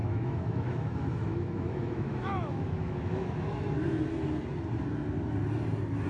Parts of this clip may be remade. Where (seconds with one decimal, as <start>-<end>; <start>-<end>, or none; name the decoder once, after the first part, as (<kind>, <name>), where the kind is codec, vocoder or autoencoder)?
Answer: 0.0-3.7 (autoencoder, DAC-VAE)